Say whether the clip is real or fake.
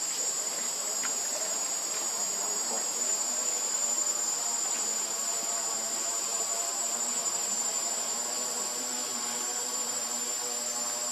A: fake